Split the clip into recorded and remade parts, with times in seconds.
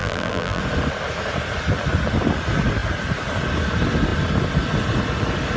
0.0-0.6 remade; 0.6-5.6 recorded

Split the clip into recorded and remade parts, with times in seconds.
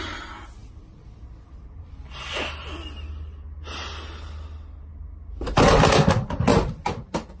0.0-7.4 recorded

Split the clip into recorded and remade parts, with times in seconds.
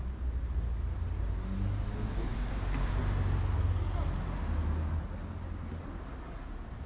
0.0-6.9 recorded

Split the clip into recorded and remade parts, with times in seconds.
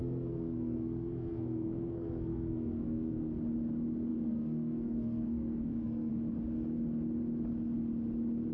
0.0-3.4 remade; 3.4-4.1 recorded; 4.1-6.1 remade; 6.1-8.5 recorded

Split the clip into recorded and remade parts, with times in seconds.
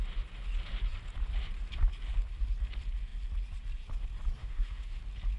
0.0-4.4 recorded; 4.4-5.0 remade; 5.0-5.4 recorded